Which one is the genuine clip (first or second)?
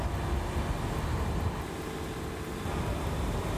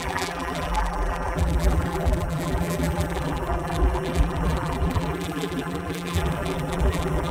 first